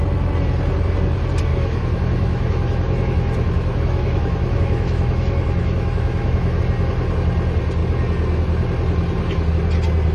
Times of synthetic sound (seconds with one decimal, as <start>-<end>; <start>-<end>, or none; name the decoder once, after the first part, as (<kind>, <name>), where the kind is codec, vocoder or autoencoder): 1.5-6.6 (autoencoder, DAC-VAE)